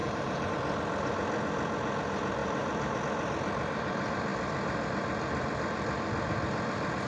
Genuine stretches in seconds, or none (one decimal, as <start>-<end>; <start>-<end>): 0.5-2.4; 3.0-7.1